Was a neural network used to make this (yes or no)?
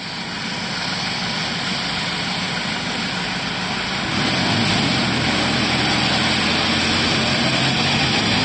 no